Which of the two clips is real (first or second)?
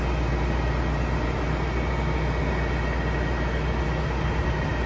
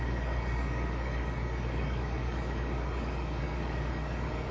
first